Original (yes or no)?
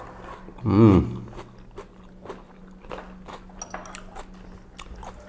yes